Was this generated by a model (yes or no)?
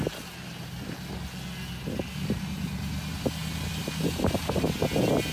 no